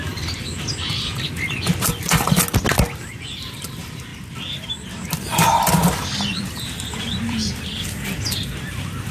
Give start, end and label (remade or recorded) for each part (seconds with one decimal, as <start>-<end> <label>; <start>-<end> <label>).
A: 0.0-1.1 remade; 1.1-3.1 recorded; 3.1-4.1 remade; 4.1-5.1 recorded; 5.1-9.1 remade